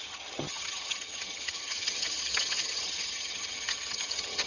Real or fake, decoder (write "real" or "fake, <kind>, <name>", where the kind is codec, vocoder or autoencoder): fake, vocoder, HiFi-GAN